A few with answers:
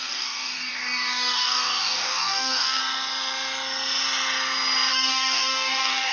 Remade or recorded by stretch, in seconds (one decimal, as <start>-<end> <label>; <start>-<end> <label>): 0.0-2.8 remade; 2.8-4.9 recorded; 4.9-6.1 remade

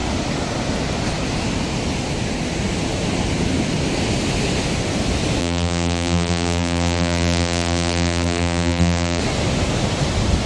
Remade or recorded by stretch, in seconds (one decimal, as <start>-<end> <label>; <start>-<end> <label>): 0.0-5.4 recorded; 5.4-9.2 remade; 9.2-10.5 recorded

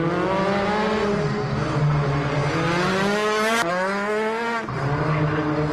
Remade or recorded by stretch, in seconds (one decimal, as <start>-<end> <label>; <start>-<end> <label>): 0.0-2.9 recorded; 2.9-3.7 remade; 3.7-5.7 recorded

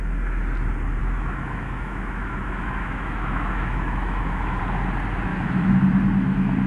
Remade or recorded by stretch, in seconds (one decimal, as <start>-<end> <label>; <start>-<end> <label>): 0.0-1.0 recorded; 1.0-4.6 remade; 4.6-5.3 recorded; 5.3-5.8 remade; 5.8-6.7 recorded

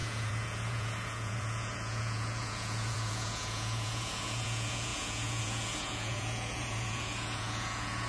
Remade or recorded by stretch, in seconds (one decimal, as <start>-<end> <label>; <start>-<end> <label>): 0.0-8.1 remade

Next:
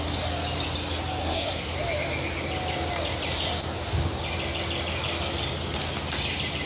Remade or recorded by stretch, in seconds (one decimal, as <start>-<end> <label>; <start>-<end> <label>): 0.0-1.2 recorded; 1.2-1.7 remade; 1.7-6.7 recorded

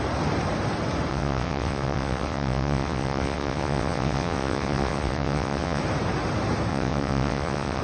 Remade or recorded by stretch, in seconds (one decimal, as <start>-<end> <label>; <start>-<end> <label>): 0.0-1.1 recorded; 1.1-5.8 remade; 5.8-6.7 recorded; 6.7-7.8 remade

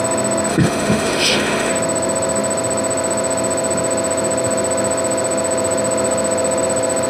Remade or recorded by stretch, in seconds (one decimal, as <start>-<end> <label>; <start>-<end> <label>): 0.0-0.5 recorded; 0.5-1.7 remade; 1.7-7.1 recorded